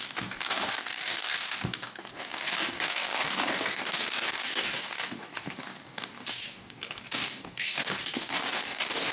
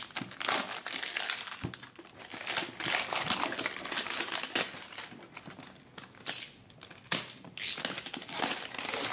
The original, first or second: second